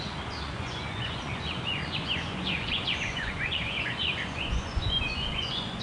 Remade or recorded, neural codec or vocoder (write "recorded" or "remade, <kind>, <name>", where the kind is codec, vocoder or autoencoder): remade, vocoder, Vocos